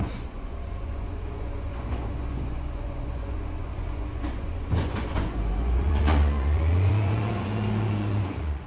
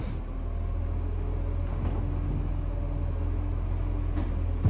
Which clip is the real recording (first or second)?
second